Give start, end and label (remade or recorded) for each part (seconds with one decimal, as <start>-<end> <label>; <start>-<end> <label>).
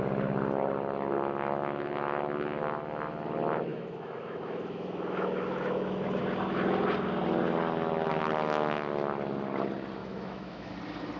0.0-3.7 recorded; 3.7-6.2 remade; 6.2-10.0 recorded; 10.0-10.7 remade; 10.7-11.2 recorded